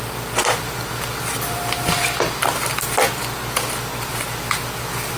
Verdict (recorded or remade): remade